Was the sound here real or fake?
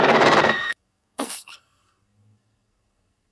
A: fake